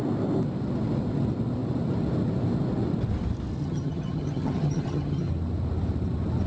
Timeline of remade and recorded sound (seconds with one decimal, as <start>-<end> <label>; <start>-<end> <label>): 0.0-3.6 recorded; 3.6-5.3 remade; 5.3-6.5 recorded

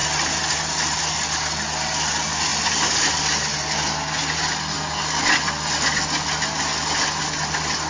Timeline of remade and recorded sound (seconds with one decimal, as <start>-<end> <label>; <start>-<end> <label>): 0.0-7.9 recorded

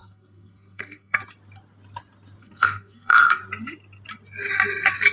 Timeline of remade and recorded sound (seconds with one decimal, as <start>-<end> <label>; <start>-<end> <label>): 0.0-1.2 remade; 1.2-2.4 recorded; 2.4-3.4 remade; 3.4-5.1 recorded

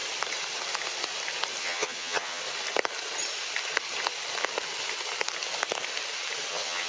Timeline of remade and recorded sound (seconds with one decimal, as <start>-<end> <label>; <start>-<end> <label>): 0.0-1.6 recorded; 1.6-2.4 remade; 2.4-6.5 recorded; 6.5-6.9 remade